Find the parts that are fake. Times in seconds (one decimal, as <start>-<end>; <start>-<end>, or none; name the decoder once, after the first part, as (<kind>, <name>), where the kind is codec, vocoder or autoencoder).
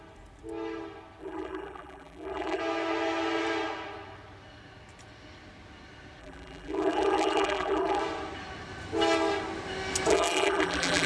1.2-2.6 (vocoder, BigVGAN v2); 6.2-8.0; 10.1-11.1